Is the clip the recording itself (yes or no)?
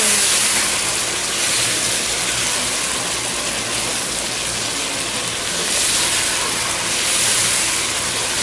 yes